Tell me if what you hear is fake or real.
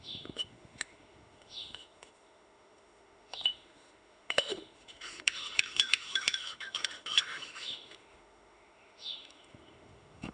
fake